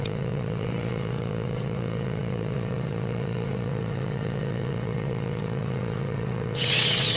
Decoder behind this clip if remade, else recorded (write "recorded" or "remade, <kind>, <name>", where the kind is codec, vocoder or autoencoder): remade, vocoder, WaveNeXt